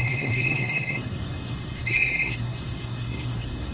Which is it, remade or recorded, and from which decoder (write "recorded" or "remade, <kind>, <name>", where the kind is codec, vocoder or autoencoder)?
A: remade, codec, SNAC